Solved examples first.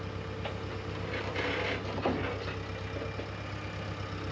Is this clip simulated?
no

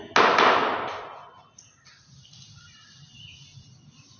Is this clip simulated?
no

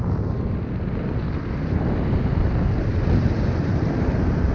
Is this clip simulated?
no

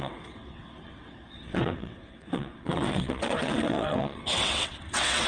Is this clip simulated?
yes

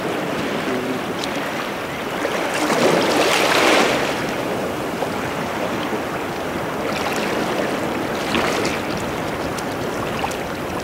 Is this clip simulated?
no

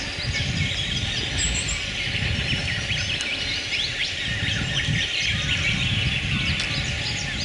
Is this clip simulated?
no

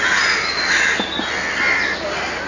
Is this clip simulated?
no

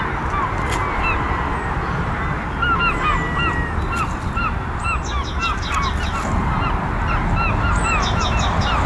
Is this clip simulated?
no